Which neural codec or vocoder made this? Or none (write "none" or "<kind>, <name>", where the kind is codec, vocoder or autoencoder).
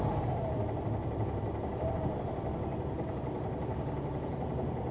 none